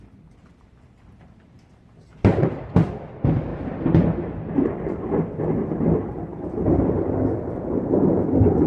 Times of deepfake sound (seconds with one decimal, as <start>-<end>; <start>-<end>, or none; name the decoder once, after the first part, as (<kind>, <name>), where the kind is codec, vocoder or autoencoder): none